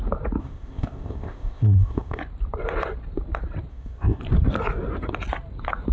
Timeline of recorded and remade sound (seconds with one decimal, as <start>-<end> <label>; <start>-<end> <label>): 0.0-0.4 recorded; 0.4-2.2 remade; 2.2-3.7 recorded; 3.7-4.2 remade; 4.2-5.9 recorded